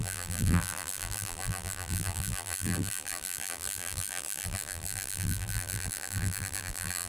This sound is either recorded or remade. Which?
remade